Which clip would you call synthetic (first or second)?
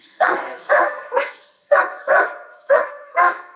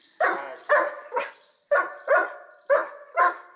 first